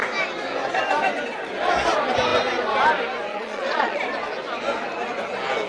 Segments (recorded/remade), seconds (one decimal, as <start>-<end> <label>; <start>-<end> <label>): 0.0-3.3 recorded; 3.3-4.0 remade; 4.0-5.7 recorded